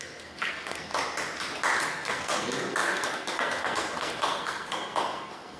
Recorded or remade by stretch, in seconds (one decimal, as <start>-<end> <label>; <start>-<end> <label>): 0.0-0.9 remade; 0.9-1.8 recorded; 1.8-5.6 remade